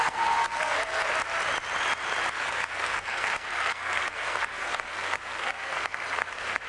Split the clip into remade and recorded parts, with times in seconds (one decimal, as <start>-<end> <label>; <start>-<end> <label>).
0.0-1.0 remade; 1.0-2.3 recorded; 2.3-6.7 remade